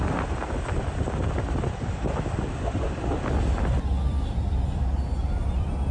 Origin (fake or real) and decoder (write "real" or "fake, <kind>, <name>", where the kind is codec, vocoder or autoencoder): real